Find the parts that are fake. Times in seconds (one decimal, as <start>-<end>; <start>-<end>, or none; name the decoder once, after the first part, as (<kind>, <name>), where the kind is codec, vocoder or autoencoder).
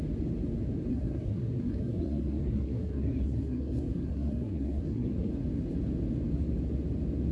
0.9-5.3 (codec, SNAC)